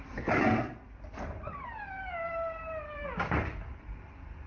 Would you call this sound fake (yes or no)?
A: no